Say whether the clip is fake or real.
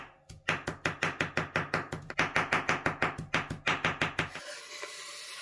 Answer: real